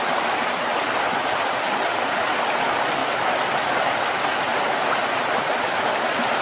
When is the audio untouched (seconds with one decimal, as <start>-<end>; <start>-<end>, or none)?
0.0-6.4